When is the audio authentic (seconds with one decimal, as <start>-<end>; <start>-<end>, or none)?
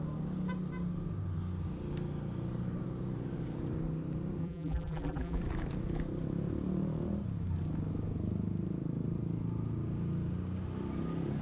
0.0-4.4; 5.4-11.4